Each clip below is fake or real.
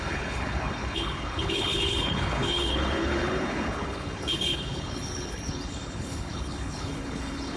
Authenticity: fake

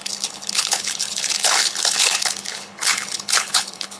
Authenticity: fake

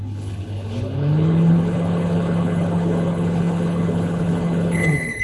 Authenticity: fake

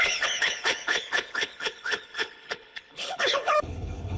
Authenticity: fake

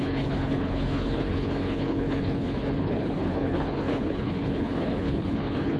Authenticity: fake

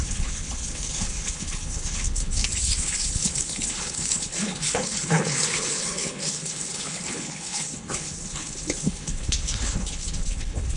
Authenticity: fake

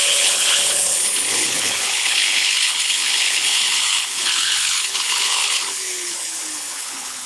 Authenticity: fake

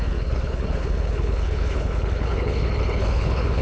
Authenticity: fake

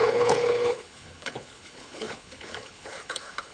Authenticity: fake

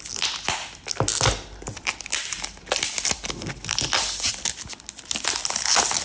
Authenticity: real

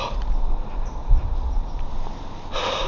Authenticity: real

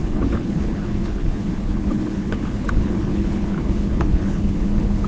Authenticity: fake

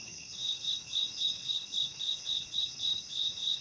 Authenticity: fake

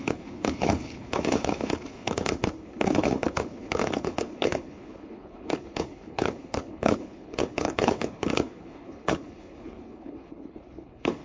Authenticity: fake